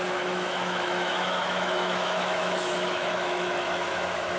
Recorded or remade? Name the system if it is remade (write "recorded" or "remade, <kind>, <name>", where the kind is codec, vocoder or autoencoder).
remade, autoencoder, DAC-VAE